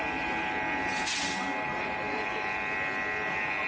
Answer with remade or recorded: recorded